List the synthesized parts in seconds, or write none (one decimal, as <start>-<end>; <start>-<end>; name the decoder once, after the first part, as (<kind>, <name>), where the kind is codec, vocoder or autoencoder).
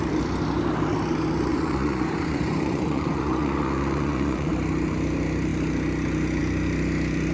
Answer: 1.5-4.5 (vocoder, Vocos)